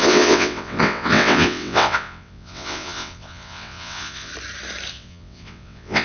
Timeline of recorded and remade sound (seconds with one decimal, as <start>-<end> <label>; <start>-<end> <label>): 0.0-4.3 remade; 4.3-4.9 recorded; 4.9-6.0 remade